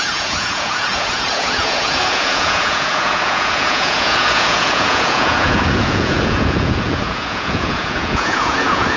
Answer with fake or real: fake